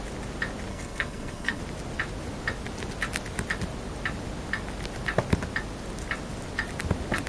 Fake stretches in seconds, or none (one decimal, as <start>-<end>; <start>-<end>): 0.7-1.6